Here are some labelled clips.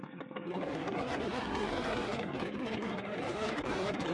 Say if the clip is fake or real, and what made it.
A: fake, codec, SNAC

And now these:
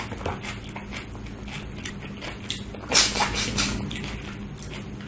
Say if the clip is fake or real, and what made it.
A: real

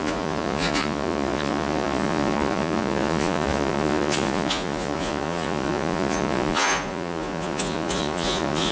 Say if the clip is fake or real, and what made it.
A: fake, vocoder, Vocos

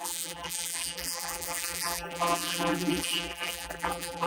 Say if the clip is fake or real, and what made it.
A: fake, vocoder, BigVGAN v2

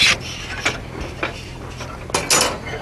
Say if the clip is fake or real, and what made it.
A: real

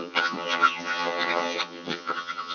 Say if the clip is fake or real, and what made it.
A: fake, vocoder, HiFi-GAN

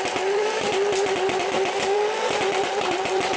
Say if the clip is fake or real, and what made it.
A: fake, vocoder, BigVGAN v2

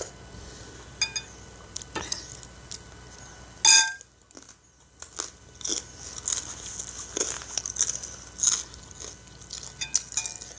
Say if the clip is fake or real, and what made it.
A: real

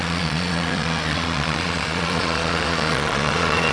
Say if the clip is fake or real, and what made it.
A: fake, vocoder, Vocos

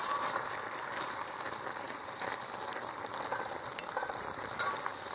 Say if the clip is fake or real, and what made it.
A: real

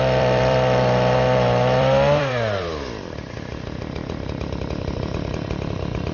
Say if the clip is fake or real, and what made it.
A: fake, vocoder, BigVGAN v2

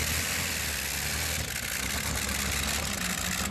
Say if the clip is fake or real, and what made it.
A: real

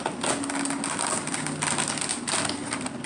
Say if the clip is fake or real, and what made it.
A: real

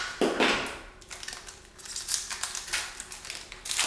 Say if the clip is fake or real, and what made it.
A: real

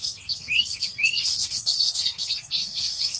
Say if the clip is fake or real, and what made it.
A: fake, codec, SNAC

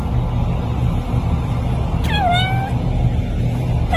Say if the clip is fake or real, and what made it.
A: real